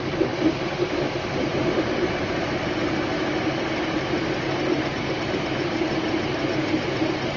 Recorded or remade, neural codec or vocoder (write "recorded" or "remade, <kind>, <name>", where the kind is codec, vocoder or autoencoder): remade, vocoder, BigVGAN v2